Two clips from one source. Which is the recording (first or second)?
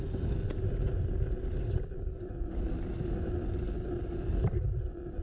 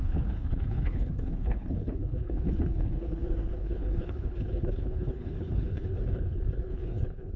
first